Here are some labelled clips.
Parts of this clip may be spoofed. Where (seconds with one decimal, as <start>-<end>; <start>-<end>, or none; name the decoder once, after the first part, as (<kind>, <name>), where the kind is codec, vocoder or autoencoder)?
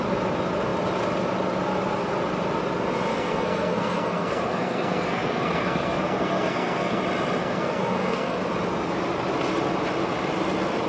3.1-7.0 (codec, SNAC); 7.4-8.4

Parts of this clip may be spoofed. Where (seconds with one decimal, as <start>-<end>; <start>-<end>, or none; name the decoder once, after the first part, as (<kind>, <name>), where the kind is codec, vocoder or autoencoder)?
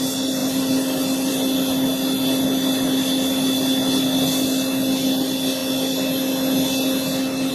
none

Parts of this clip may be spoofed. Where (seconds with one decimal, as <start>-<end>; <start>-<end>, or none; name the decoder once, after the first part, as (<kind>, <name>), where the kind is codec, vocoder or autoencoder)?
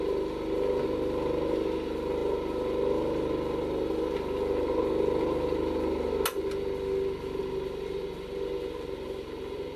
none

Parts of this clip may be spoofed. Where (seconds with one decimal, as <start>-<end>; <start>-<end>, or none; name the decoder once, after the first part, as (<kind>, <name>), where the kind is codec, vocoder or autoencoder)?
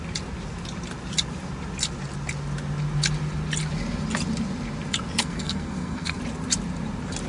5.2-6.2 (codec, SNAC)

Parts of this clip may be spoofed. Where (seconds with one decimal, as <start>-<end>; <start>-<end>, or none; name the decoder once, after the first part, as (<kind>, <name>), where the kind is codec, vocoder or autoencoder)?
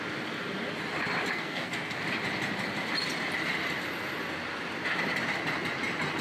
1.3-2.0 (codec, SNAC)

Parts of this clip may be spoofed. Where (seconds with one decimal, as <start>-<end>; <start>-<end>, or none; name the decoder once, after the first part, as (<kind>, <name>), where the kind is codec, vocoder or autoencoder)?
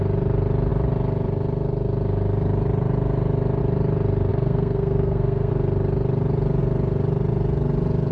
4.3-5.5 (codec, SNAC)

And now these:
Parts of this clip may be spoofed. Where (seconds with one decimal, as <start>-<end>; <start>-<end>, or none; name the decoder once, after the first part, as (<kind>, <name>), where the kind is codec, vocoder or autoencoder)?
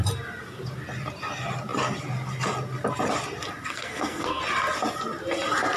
3.6-4.4 (codec, SNAC)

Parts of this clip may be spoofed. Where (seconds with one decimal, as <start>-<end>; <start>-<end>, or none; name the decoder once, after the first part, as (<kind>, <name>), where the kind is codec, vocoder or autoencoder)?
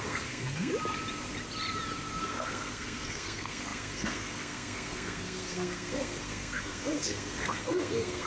0.0-0.7 (codec, SNAC); 2.2-8.3